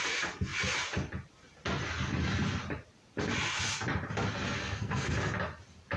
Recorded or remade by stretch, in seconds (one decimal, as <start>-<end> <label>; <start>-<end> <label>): 0.0-4.6 recorded; 4.6-5.1 remade; 5.1-6.0 recorded